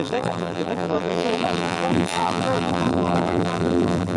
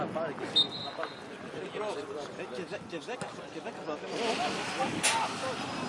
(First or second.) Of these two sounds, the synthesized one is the first